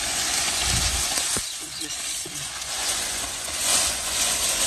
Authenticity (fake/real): fake